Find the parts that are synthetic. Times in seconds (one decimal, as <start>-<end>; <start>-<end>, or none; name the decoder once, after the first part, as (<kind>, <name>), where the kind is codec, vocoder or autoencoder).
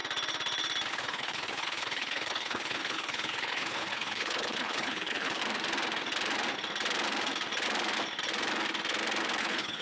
0.9-5.4 (codec, HILCodec); 9.4-9.8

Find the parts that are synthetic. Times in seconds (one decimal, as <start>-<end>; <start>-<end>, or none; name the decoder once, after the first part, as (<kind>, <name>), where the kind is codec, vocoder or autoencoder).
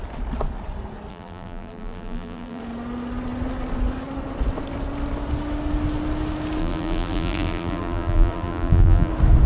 1.1-2.6 (vocoder, BigVGAN v2); 6.6-9.1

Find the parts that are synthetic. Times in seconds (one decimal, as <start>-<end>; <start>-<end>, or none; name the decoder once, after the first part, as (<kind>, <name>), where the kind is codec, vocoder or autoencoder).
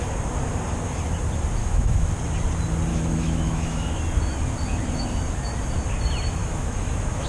1.6-2.1 (autoencoder, DAC-VAE); 2.9-4.0; 6.4-7.3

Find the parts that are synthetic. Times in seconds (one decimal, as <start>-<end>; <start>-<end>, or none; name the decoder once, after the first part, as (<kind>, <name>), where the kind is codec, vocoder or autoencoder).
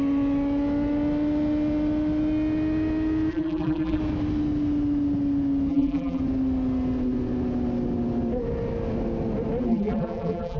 3.3-4.0 (vocoder, BigVGAN v2); 5.7-6.2; 9.7-10.6